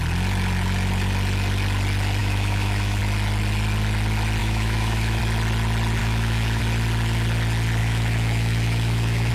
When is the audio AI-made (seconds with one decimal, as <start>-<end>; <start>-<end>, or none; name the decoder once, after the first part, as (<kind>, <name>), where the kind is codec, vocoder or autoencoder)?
2.2-3.0 (autoencoder, DAC-VAE); 4.4-5.2; 6.0-6.6; 7.8-9.3

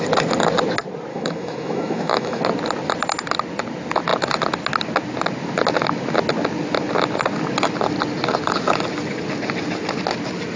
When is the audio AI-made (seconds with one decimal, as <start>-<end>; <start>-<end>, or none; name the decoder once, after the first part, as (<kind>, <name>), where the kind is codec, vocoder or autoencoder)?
1.1-2.4 (autoencoder, DAC-VAE)

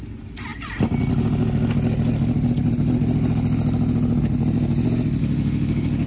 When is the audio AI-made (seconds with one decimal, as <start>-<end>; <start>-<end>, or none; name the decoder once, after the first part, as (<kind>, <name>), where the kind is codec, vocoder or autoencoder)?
5.2-6.1 (autoencoder, DAC-VAE)

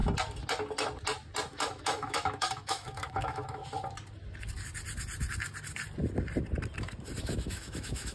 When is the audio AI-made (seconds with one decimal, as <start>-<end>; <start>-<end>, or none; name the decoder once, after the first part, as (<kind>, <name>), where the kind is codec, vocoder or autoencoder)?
1.5-3.6 (autoencoder, DAC-VAE); 7.2-8.1